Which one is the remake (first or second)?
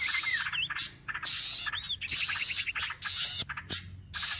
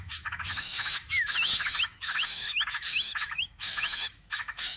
second